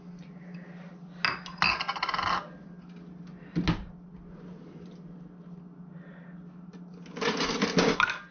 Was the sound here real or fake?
real